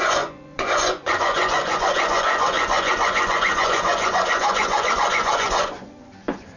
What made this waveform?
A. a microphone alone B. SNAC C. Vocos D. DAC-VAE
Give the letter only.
C